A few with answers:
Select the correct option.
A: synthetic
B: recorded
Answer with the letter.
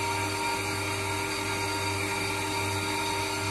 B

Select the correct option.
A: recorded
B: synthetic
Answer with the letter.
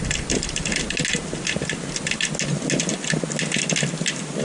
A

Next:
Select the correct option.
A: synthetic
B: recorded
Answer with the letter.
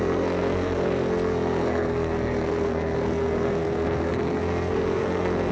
A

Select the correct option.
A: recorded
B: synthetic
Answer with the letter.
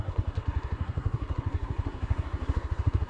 B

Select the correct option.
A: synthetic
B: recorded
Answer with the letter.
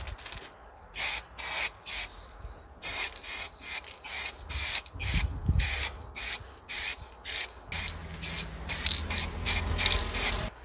B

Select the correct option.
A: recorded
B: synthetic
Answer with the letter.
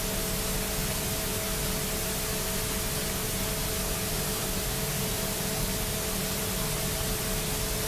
A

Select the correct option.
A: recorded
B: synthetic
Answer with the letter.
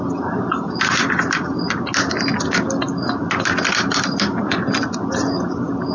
A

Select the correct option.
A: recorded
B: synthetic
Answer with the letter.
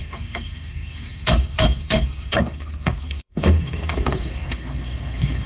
B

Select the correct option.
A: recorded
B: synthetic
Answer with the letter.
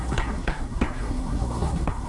B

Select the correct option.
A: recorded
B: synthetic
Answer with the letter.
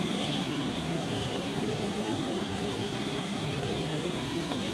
B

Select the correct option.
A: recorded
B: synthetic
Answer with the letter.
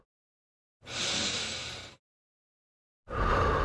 A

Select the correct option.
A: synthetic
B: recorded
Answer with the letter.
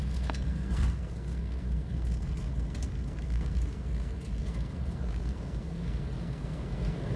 A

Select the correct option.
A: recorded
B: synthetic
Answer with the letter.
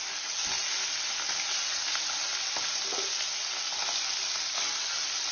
A